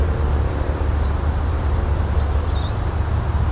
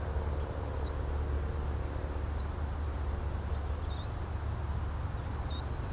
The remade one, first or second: first